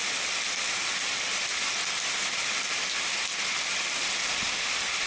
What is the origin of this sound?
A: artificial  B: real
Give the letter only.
B